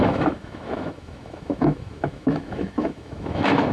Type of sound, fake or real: fake